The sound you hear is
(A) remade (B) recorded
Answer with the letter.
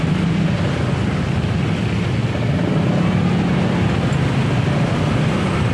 B